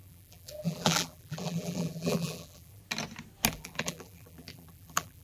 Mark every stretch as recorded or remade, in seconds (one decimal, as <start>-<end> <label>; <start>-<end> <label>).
0.0-2.8 remade; 2.8-3.5 recorded; 3.5-5.2 remade